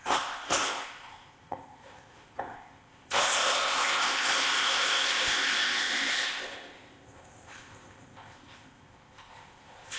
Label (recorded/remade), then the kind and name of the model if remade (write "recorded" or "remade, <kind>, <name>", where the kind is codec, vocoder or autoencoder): remade, codec, ZipCodec